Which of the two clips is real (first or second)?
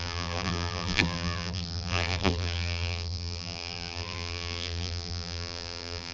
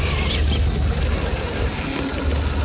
second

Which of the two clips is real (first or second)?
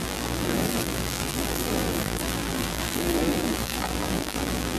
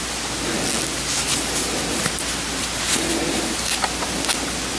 second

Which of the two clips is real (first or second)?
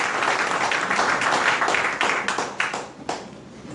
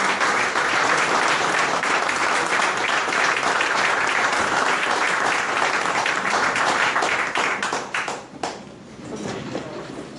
first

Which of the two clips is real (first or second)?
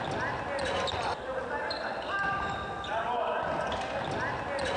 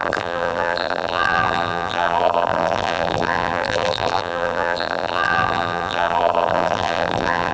first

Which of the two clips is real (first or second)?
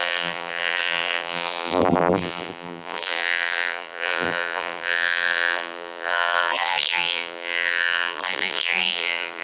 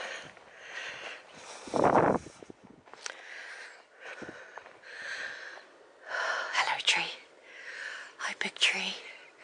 second